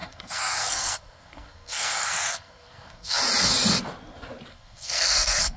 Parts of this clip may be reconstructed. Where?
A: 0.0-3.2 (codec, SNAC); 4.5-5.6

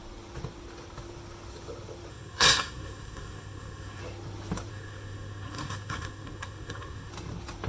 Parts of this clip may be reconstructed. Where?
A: 2.1-4.0 (codec, SNAC); 4.7-7.1

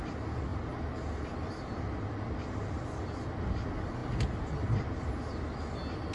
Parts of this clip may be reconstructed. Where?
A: none

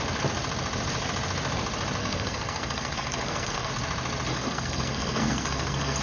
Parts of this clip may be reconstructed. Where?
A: 2.0-3.7 (codec, SNAC); 4.3-6.0

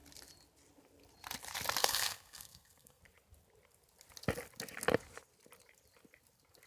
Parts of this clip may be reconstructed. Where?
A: 1.8-3.0 (codec, SNAC)

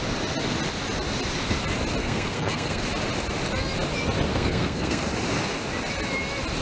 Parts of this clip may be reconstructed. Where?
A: 2.0-2.8 (codec, SNAC); 4.3-5.0

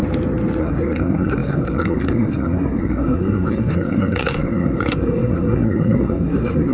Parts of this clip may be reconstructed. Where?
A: 0.6-6.7 (codec, SNAC)

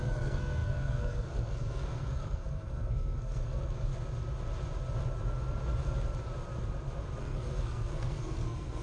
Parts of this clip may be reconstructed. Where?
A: 0.0-3.9 (codec, SNAC); 7.2-8.8